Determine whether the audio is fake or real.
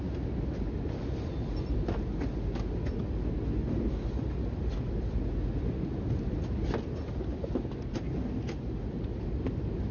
real